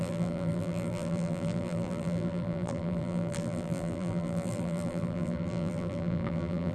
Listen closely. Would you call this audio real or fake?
fake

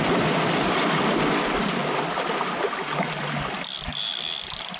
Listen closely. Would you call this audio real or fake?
real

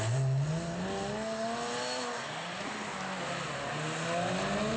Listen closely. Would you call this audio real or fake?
real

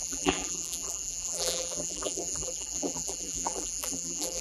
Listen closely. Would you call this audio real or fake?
fake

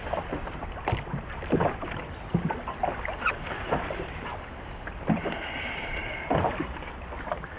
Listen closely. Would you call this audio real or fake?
real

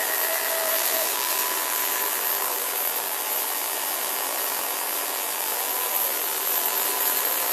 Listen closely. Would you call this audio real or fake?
fake